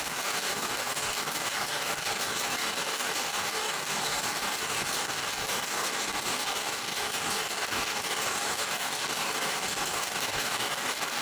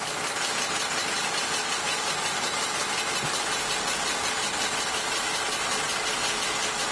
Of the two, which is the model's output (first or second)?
first